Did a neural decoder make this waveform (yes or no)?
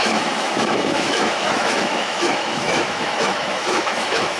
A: yes